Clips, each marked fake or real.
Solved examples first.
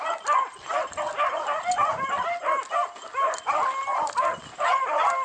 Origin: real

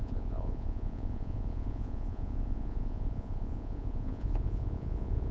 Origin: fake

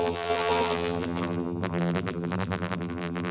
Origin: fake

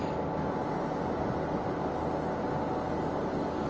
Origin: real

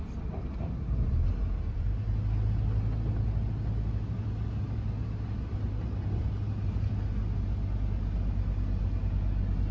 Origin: real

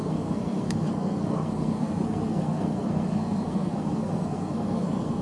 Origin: fake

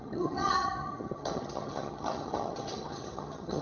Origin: fake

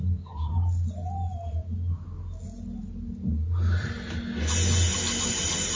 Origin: real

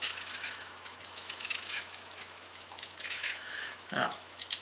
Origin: fake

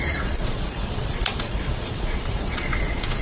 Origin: fake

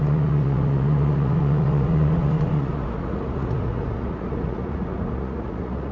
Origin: fake